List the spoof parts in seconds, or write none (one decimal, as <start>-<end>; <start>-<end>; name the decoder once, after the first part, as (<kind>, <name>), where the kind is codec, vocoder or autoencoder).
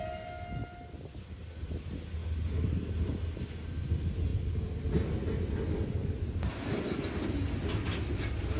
none